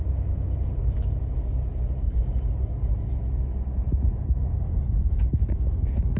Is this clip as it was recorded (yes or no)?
yes